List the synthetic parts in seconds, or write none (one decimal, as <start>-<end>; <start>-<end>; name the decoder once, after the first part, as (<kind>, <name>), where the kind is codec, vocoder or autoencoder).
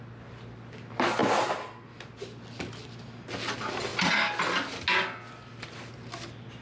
none